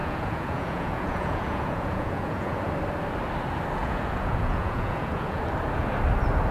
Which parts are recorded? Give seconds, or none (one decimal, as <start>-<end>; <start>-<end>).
2.7-3.8; 5.4-6.5